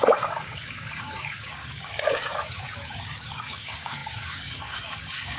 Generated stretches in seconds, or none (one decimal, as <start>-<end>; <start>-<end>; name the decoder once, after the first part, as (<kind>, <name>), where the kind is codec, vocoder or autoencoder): 0.0-5.4 (codec, DAC)